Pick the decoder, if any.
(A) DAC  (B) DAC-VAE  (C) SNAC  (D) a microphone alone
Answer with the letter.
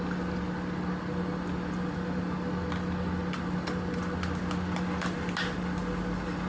D